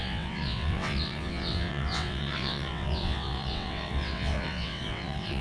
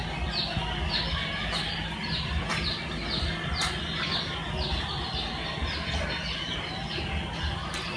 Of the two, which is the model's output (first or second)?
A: first